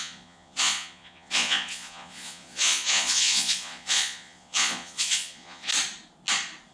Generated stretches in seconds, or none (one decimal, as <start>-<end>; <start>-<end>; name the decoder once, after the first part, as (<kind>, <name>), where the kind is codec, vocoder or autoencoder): 0.0-5.7 (vocoder, Vocos)